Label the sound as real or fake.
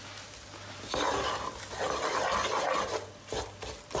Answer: real